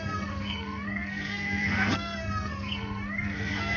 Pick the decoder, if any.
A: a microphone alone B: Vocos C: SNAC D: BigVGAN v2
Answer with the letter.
C